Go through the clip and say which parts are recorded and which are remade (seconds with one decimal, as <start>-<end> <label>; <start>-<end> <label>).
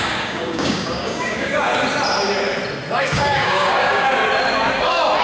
0.0-1.7 remade; 1.7-3.0 recorded; 3.0-4.2 remade; 4.2-5.2 recorded